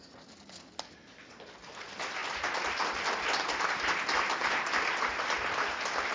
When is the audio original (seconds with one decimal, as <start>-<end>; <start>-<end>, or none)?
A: 0.0-6.1